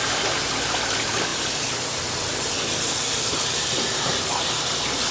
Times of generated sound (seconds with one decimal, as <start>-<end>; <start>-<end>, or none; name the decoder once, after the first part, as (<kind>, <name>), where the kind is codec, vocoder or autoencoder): none